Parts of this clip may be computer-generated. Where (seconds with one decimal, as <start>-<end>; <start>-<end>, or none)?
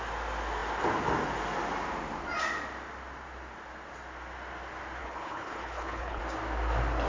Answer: 5.0-6.2